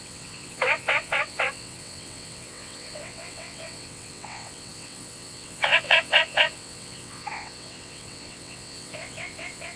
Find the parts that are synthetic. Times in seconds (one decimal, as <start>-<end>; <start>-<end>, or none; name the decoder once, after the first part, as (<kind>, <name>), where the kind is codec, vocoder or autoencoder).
0.0-9.8 (vocoder, WaveNeXt)